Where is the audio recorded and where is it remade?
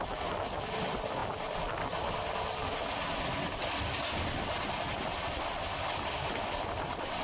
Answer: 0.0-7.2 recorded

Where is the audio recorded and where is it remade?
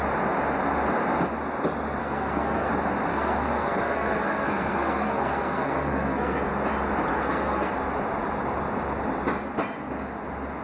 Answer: 0.0-2.0 recorded; 2.0-2.7 remade; 2.7-3.1 recorded; 3.1-6.4 remade; 6.4-7.1 recorded; 7.1-7.7 remade; 7.7-10.6 recorded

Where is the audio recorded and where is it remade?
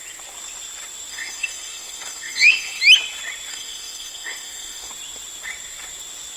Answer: 0.0-1.1 recorded; 1.1-2.8 remade; 2.8-3.5 recorded; 3.5-4.9 remade; 4.9-6.4 recorded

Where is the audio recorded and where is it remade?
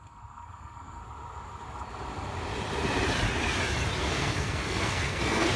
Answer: 0.0-1.0 remade; 1.0-4.0 recorded; 4.0-5.6 remade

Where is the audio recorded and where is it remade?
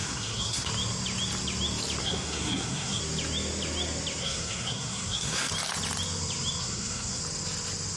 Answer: 0.0-0.7 remade; 0.7-2.0 recorded; 2.0-3.0 remade; 3.0-4.2 recorded; 4.2-5.5 remade; 5.5-6.6 recorded; 6.6-7.2 remade; 7.2-8.0 recorded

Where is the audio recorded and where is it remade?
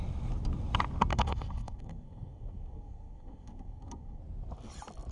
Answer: 0.0-1.1 recorded; 1.1-4.2 remade; 4.2-5.1 recorded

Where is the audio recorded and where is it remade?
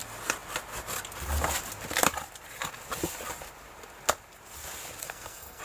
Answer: 0.0-5.0 recorded; 5.0-5.6 remade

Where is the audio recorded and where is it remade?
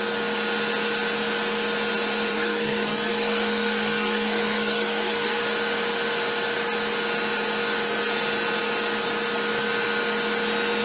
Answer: 0.0-2.3 recorded; 2.3-5.4 remade; 5.4-10.8 recorded